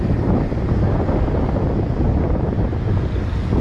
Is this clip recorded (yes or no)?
yes